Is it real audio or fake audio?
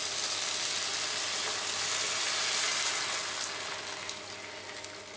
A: real